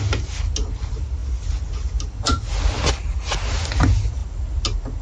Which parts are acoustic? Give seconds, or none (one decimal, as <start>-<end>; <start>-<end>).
0.0-5.0